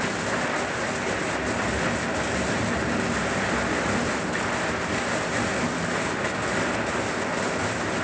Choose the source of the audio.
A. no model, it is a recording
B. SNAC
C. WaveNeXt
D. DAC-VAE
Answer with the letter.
A